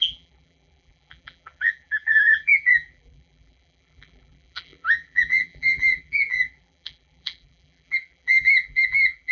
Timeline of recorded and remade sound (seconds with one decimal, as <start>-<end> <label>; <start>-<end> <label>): 0.0-9.3 remade